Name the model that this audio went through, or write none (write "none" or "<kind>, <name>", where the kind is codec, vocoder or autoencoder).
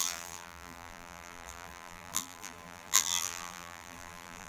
vocoder, BigVGAN v2